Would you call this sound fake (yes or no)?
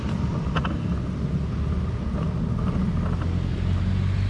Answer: no